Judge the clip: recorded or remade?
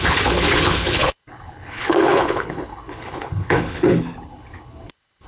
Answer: remade